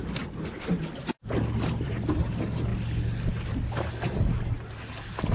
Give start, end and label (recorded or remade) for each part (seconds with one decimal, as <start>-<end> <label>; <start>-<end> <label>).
0.0-5.3 recorded